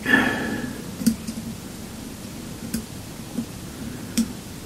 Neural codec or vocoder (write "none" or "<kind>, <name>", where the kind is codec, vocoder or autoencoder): vocoder, BigVGAN v2